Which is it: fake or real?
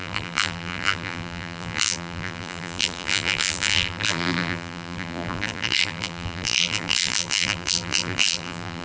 fake